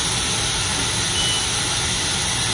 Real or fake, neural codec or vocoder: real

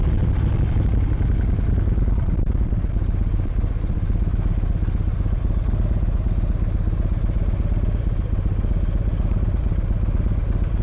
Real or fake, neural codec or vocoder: real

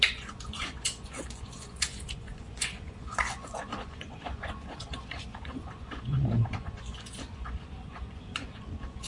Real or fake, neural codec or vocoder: fake, vocoder, Vocos